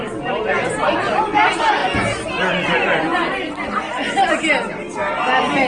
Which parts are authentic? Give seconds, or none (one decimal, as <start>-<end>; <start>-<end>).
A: 0.0-5.7